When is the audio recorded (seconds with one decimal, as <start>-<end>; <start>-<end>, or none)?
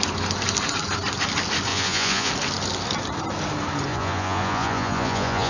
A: 0.0-1.7; 2.3-3.9